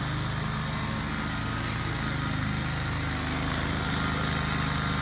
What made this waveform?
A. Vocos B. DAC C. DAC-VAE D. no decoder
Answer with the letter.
D